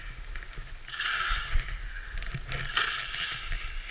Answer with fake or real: real